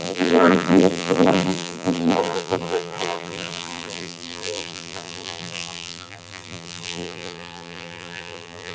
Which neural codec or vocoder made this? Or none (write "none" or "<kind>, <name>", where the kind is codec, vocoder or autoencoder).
vocoder, BigVGAN v2